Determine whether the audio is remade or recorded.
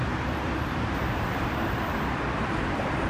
remade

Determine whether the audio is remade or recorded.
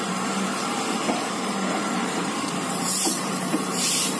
remade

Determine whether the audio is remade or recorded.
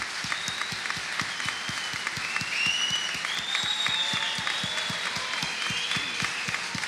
recorded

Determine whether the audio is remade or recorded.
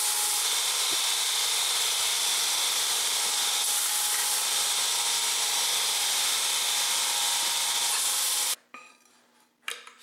recorded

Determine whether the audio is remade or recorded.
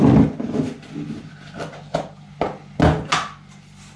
recorded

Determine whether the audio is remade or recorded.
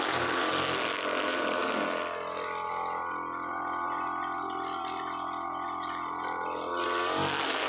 recorded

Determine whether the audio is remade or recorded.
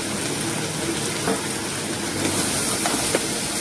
recorded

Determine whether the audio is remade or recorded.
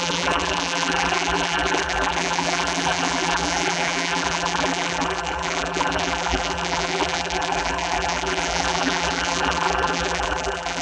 remade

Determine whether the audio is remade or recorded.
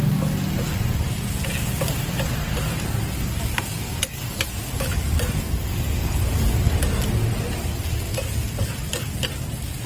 recorded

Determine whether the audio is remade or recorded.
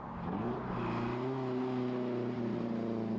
recorded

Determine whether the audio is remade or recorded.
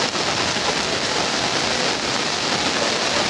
recorded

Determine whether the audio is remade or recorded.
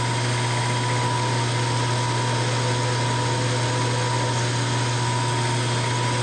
recorded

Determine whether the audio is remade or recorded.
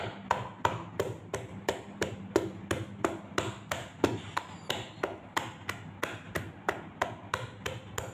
recorded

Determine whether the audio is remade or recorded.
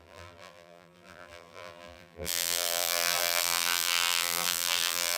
remade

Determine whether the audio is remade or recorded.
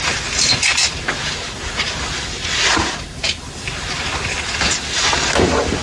recorded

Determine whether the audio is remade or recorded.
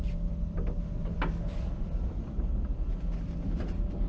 recorded